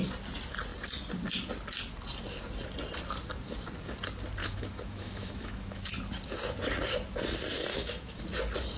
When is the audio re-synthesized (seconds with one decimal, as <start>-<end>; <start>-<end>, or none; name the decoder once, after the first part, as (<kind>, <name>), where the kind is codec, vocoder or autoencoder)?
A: 4.4-5.9 (autoencoder, DAC-VAE); 7.7-8.2